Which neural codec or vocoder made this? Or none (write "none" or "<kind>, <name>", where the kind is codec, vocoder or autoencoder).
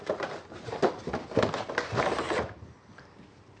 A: vocoder, BigVGAN v2